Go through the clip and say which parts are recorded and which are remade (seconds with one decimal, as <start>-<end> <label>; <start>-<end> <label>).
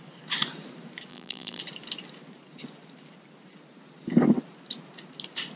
0.0-1.1 recorded; 1.1-1.6 remade; 1.6-5.6 recorded